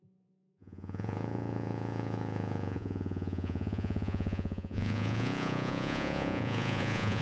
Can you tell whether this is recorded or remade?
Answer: remade